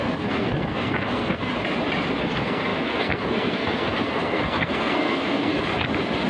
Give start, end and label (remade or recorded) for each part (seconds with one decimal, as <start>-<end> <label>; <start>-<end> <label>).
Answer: 0.0-1.5 remade; 1.5-2.2 recorded; 2.2-5.5 remade; 5.5-6.3 recorded